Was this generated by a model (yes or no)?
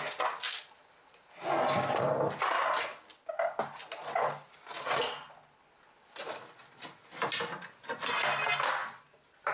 no